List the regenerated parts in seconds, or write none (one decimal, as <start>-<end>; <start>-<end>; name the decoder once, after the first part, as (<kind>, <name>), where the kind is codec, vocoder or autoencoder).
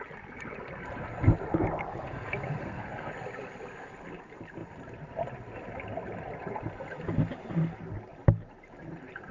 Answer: 2.6-3.1 (codec, SNAC)